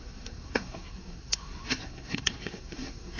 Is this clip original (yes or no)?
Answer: no